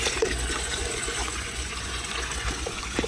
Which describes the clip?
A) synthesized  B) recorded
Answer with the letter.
A